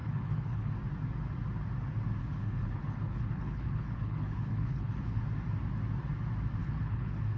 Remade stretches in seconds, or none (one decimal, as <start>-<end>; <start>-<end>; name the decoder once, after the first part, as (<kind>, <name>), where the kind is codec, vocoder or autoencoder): 0.0-0.7 (codec, HILCodec); 2.2-5.2; 6.6-7.4